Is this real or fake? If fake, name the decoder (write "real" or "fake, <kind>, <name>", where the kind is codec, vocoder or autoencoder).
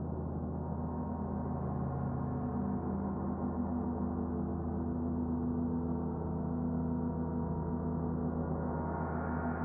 real